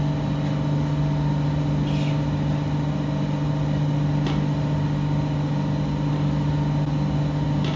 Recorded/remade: recorded